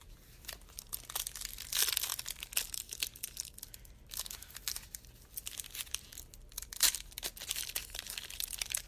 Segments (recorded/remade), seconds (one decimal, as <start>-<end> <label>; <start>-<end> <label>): 0.0-8.9 recorded